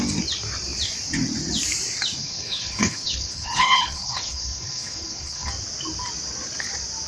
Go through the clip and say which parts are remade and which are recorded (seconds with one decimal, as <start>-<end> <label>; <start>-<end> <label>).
0.0-2.2 recorded; 2.2-5.5 remade; 5.5-7.1 recorded